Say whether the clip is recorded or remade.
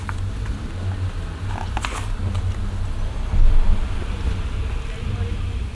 recorded